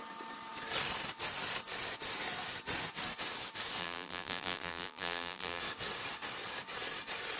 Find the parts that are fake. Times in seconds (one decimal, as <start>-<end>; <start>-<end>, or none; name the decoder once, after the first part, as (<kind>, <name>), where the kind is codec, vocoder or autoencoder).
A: 3.8-5.6 (vocoder, BigVGAN v2)